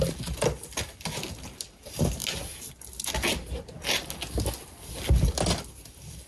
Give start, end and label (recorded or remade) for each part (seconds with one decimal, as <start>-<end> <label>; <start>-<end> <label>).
0.0-6.3 recorded